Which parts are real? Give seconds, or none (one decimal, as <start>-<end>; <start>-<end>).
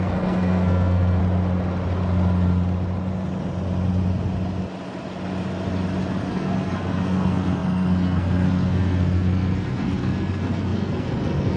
1.2-6.3